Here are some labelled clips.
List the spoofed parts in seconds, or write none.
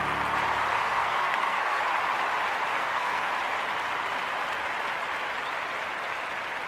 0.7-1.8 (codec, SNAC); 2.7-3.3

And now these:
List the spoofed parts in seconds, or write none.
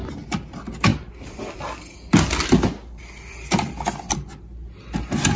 none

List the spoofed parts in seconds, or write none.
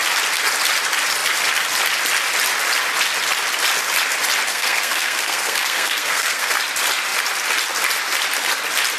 4.5-6.6 (codec, SNAC)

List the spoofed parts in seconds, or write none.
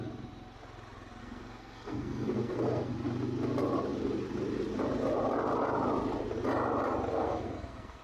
1.2-2.9 (codec, SNAC); 7.1-8.0